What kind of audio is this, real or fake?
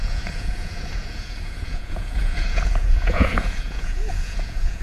fake